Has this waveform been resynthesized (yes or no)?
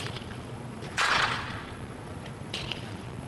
yes